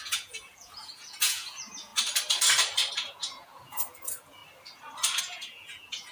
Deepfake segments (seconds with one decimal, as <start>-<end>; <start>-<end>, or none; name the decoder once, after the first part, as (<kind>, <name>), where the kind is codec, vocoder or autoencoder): 0.0-1.9 (vocoder, Vocos); 2.9-4.4; 5.2-6.1